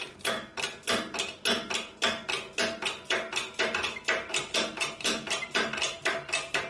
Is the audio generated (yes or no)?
no